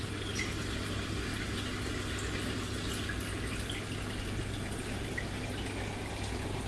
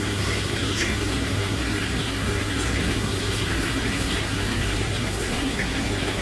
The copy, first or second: second